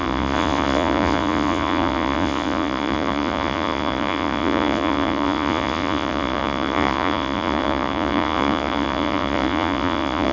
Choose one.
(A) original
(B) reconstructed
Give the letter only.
B